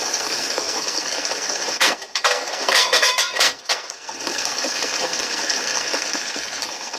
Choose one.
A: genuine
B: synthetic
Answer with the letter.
B